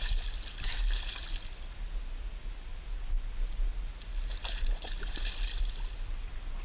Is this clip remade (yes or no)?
no